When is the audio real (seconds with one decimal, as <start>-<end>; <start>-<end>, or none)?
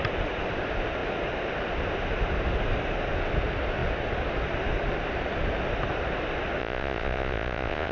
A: 0.0-6.6